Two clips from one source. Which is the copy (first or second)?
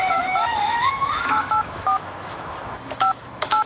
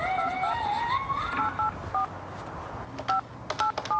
first